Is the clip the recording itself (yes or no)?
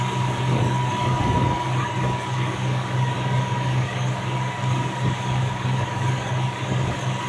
no